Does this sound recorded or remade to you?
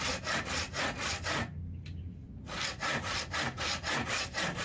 recorded